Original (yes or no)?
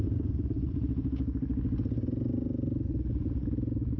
yes